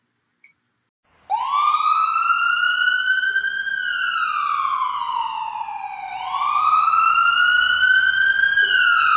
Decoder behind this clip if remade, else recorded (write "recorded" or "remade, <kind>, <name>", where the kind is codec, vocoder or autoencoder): recorded